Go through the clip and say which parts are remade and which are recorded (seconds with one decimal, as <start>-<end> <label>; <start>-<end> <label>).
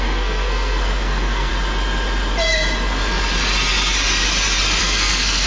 0.0-1.5 remade; 1.5-4.8 recorded; 4.8-5.5 remade